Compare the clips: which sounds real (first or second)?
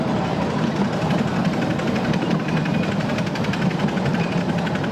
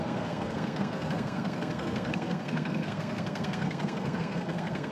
first